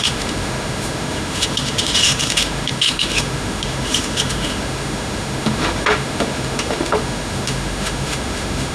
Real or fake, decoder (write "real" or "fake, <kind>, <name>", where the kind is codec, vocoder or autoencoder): fake, autoencoder, DAC-VAE